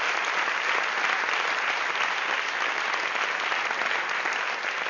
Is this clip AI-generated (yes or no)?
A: no